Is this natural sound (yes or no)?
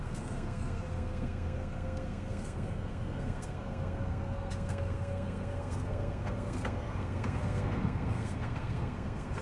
no